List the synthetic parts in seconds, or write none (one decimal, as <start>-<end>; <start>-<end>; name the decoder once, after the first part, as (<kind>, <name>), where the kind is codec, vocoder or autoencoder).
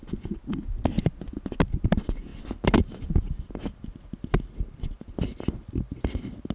none